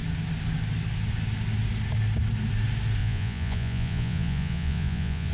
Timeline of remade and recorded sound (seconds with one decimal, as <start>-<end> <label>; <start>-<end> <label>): 0.0-3.0 recorded; 3.0-5.3 remade